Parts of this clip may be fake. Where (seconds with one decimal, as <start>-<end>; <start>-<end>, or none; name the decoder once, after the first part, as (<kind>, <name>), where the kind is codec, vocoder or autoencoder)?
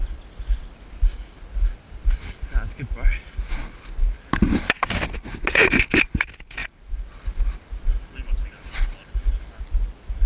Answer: none